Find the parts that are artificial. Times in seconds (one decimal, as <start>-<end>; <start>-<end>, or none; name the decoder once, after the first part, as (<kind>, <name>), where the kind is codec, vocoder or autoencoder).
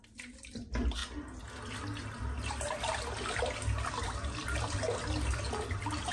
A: none